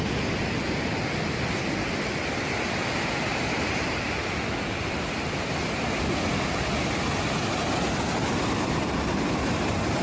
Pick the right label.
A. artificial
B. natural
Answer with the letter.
B